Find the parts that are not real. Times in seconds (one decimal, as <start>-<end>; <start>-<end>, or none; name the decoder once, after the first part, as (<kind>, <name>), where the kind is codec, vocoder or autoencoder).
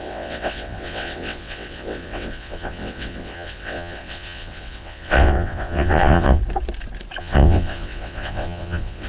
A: 0.0-6.4 (vocoder, WaveNeXt); 7.2-9.1